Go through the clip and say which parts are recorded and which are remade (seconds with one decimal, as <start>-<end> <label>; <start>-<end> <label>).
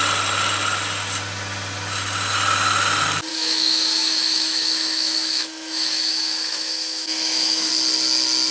0.0-3.3 recorded; 3.3-7.7 remade; 7.7-8.5 recorded